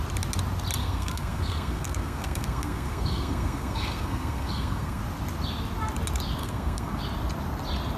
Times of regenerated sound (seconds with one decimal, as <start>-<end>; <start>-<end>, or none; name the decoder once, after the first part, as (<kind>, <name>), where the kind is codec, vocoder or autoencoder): 0.8-5.0 (codec, SNAC); 6.4-7.0